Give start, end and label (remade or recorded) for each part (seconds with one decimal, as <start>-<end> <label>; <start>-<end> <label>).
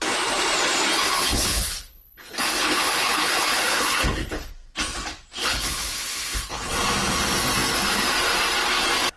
0.0-1.2 recorded; 1.2-4.5 remade; 4.5-5.4 recorded; 5.4-6.7 remade; 6.7-9.2 recorded